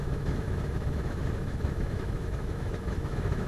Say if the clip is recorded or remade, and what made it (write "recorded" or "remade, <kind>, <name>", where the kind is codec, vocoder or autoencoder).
remade, autoencoder, DAC-VAE